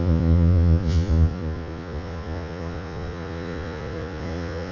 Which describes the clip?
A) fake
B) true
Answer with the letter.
A